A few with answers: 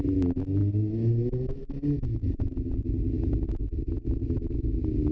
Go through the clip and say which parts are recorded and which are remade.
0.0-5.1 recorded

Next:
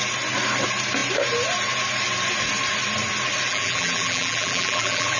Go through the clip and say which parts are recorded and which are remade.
0.0-3.5 recorded; 3.5-5.2 remade

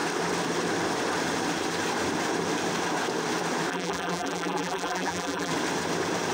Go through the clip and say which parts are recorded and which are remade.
0.0-3.7 recorded; 3.7-5.5 remade; 5.5-6.3 recorded

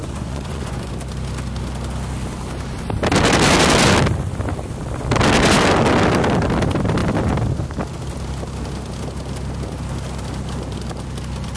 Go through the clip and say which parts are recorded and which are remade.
0.0-0.9 remade; 0.9-11.6 recorded

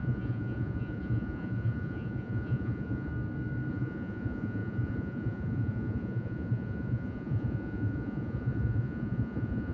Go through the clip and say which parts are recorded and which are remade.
0.0-3.1 remade; 3.1-3.7 recorded; 3.7-9.7 remade

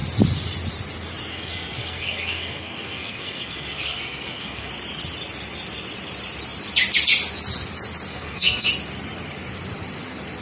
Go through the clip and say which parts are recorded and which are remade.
0.0-1.3 recorded; 1.3-4.7 remade; 4.7-8.1 recorded; 8.1-8.7 remade; 8.7-10.4 recorded

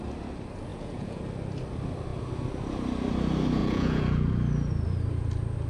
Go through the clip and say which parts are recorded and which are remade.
0.0-0.7 recorded; 0.7-1.2 remade; 1.2-3.6 recorded; 3.6-4.3 remade; 4.3-5.7 recorded